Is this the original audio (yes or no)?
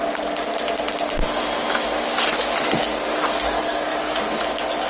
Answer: yes